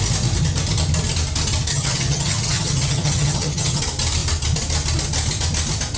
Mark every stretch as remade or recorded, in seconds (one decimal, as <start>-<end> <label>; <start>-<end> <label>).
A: 0.0-1.7 recorded; 1.7-3.8 remade; 3.8-6.0 recorded